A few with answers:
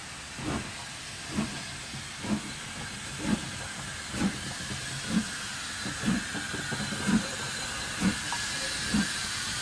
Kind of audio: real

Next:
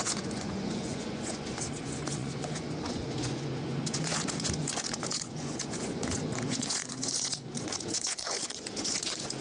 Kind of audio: fake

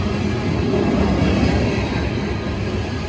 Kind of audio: real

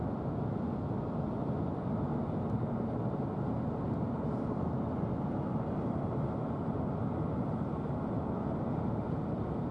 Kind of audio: real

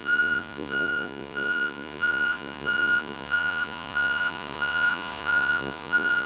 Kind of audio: fake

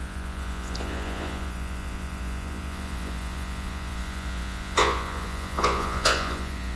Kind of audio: fake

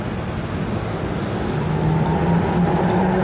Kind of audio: real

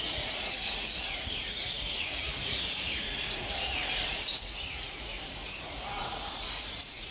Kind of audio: fake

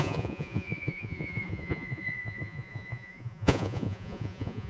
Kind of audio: fake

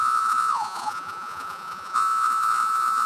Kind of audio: fake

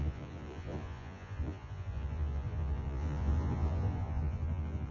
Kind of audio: fake